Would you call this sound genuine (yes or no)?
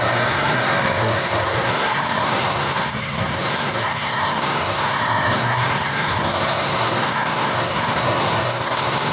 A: no